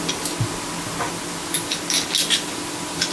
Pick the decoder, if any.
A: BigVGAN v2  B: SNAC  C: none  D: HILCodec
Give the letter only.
C